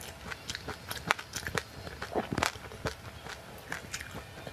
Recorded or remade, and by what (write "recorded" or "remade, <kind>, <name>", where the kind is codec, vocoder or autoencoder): recorded